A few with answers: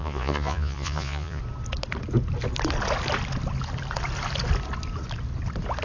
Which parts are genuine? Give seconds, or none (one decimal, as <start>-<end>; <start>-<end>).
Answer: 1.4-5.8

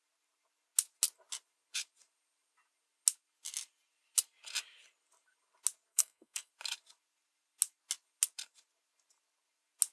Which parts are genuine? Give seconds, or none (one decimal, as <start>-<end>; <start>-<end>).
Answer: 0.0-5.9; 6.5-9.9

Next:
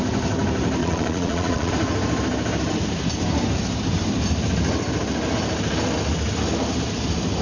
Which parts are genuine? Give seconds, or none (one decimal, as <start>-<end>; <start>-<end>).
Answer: 0.0-0.8; 1.7-7.4

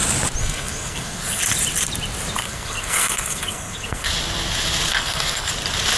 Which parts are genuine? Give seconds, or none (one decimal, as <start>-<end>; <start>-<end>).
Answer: 0.0-0.4; 1.4-2.4; 4.1-4.9; 5.5-6.0

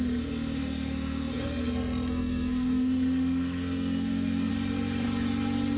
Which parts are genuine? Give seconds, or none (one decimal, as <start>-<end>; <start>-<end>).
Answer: 4.5-5.8

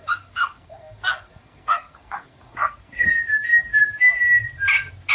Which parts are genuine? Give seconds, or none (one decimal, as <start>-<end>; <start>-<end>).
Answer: 3.1-5.1